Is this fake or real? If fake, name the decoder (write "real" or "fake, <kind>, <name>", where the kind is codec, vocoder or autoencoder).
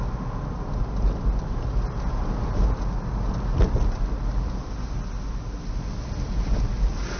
real